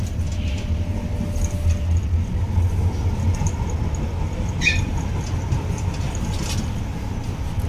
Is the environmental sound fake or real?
real